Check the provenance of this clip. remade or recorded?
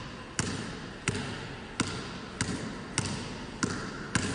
recorded